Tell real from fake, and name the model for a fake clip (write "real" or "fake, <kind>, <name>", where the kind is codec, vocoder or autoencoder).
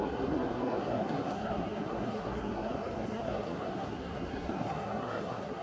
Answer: fake, codec, SNAC